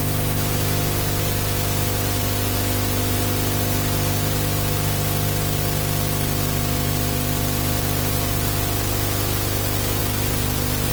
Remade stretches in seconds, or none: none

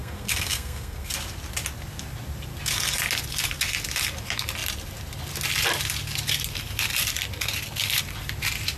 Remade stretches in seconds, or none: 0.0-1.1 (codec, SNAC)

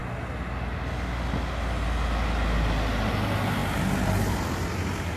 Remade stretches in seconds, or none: none

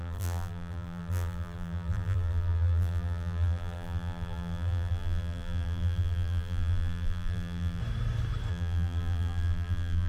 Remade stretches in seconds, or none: 0.0-7.8 (vocoder, BigVGAN v2); 8.5-10.1